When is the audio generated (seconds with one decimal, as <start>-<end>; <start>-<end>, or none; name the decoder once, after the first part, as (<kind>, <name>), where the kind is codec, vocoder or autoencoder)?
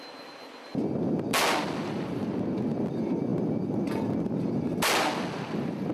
none